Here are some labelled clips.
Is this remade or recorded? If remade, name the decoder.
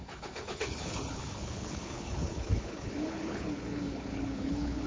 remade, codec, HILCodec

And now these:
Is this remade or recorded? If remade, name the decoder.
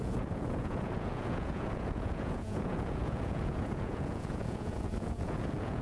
remade, vocoder, Vocos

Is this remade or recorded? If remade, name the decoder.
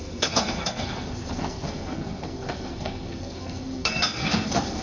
remade, codec, SNAC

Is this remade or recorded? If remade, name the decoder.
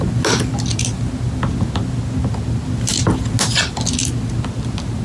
recorded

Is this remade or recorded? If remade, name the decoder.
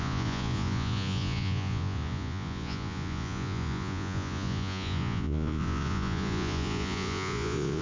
remade, vocoder, Vocos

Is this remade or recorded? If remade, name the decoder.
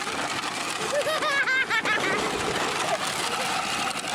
recorded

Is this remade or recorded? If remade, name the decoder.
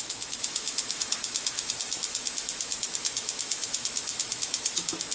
remade, autoencoder, DAC-VAE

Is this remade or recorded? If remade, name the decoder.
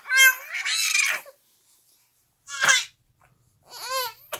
recorded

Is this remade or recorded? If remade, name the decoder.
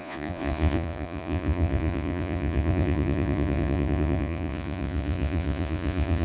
remade, vocoder, Vocos